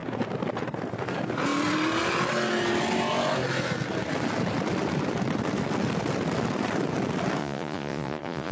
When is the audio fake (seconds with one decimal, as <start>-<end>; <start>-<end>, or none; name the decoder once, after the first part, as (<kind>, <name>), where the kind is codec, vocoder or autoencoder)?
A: 7.4-8.5 (vocoder, Vocos)